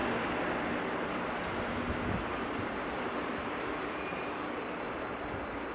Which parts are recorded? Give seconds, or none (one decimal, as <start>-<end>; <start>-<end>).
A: 0.0-2.7